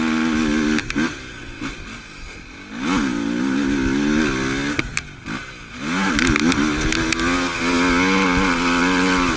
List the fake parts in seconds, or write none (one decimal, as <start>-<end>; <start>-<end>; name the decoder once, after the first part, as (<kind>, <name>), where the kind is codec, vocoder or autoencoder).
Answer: none